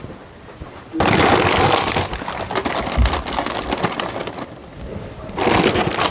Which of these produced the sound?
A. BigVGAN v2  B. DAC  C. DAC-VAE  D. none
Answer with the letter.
D